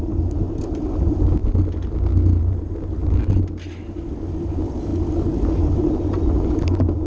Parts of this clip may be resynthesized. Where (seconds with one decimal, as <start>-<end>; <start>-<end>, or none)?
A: 0.0-1.4; 2.4-3.0; 4.4-4.9; 5.6-7.1

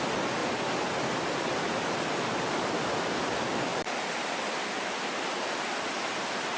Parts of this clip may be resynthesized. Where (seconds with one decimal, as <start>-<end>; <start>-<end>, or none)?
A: 0.4-3.1; 3.7-4.5

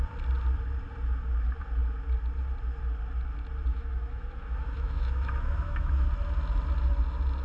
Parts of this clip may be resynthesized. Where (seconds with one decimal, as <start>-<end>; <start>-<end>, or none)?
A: 3.7-5.9

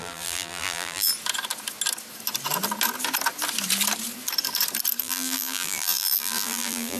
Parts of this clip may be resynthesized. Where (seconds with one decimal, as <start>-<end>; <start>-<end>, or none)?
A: 0.0-1.1; 5.0-7.0

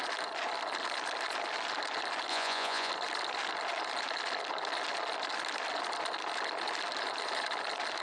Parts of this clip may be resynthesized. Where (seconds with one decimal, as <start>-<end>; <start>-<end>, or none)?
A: 2.3-2.9

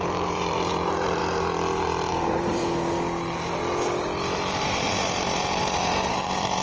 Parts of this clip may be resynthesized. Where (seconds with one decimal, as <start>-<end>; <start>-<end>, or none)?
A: 0.0-1.2; 2.1-2.6; 4.5-6.6

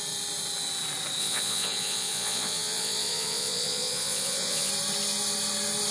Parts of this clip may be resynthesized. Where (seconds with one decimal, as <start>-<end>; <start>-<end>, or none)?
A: 1.2-4.7

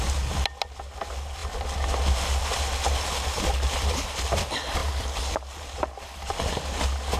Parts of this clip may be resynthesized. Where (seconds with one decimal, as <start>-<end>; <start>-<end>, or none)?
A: none